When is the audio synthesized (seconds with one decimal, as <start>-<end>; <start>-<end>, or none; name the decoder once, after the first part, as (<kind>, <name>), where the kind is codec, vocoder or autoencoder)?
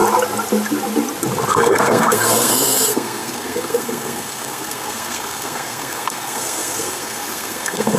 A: 1.5-8.0 (codec, SNAC)